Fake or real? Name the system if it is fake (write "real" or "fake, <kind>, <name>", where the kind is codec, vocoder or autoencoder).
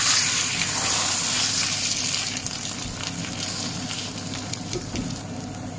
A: fake, vocoder, BigVGAN v2